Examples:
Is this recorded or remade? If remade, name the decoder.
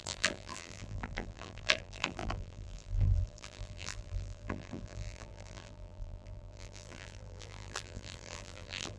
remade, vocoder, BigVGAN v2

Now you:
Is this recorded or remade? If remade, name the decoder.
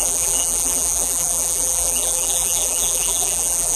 remade, vocoder, BigVGAN v2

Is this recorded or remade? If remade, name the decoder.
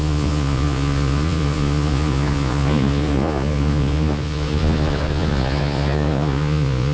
remade, vocoder, Vocos